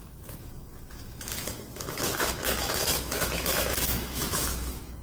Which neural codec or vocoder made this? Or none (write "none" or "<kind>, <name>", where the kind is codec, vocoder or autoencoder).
autoencoder, DAC-VAE